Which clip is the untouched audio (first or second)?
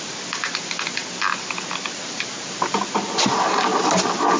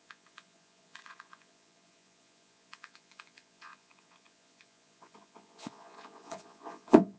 first